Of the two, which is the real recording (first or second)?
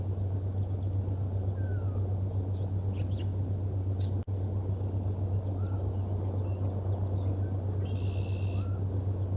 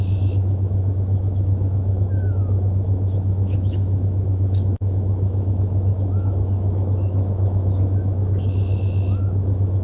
first